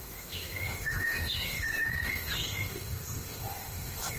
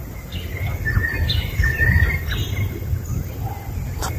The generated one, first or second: first